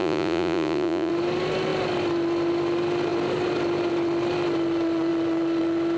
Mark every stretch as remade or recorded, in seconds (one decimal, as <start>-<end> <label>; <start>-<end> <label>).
0.0-1.1 remade; 1.1-6.0 recorded